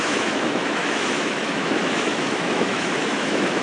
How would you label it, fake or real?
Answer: fake